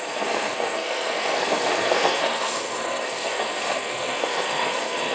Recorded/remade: remade